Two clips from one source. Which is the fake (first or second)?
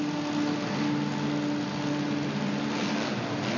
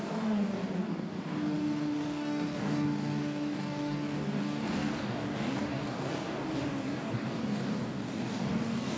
second